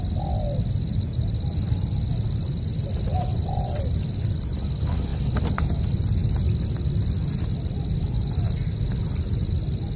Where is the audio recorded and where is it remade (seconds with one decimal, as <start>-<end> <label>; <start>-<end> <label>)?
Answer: 0.0-3.3 recorded; 3.3-3.9 remade; 3.9-10.0 recorded